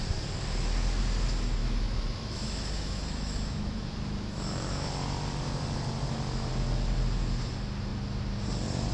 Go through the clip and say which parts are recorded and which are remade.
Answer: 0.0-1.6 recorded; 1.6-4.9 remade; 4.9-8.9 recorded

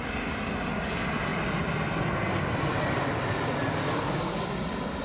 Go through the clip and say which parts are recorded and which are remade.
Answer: 0.0-5.0 recorded

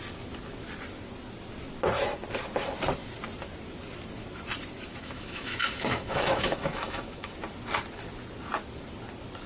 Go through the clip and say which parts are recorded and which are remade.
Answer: 0.0-5.0 recorded; 5.0-7.3 remade; 7.3-9.5 recorded

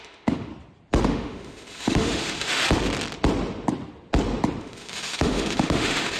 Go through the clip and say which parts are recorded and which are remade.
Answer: 0.0-0.5 remade; 0.5-1.0 recorded; 1.0-2.6 remade; 2.6-4.6 recorded; 4.6-6.2 remade

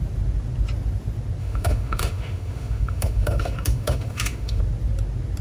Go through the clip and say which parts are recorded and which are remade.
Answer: 0.0-1.4 recorded; 1.4-4.6 remade; 4.6-5.4 recorded

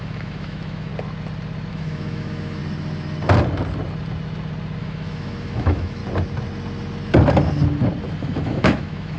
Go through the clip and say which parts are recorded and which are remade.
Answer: 0.0-0.9 remade; 0.9-1.7 recorded; 1.7-2.6 remade; 2.6-4.8 recorded; 4.8-6.0 remade; 6.0-8.2 recorded; 8.2-9.2 remade